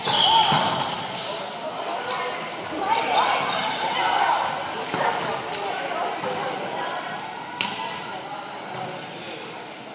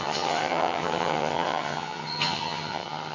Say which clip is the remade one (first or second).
second